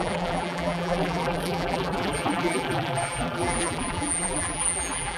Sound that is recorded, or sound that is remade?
remade